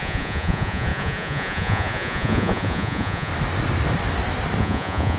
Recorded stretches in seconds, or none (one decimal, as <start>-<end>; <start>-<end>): 3.3-4.6